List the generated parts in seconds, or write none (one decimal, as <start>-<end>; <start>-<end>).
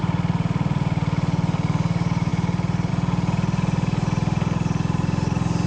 none